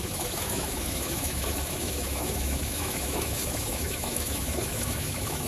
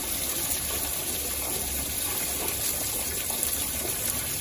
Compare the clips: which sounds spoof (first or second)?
first